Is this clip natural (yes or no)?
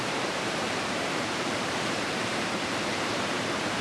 no